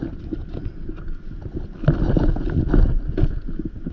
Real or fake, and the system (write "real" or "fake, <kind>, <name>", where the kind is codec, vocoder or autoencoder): real